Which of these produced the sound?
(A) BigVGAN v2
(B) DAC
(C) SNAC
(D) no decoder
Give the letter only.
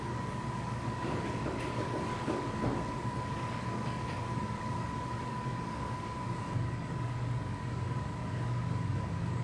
B